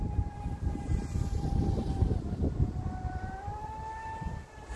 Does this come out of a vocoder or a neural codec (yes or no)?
yes